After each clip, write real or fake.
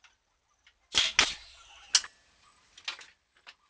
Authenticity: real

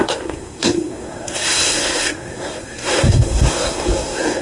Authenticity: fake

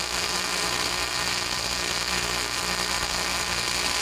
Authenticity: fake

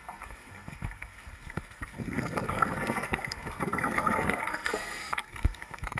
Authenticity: fake